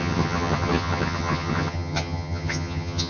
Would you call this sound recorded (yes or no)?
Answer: no